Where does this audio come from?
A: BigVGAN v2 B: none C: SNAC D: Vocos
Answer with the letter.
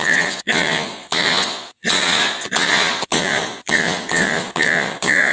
D